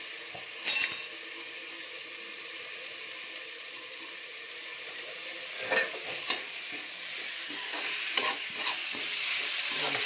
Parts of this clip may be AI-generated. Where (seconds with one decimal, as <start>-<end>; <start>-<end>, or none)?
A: 1.8-6.7